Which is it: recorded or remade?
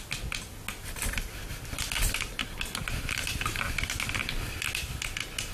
recorded